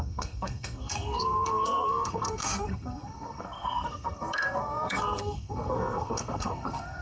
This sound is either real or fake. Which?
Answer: fake